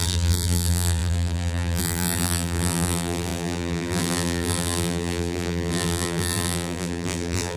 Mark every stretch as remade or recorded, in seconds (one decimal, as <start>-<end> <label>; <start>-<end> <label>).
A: 0.0-7.6 remade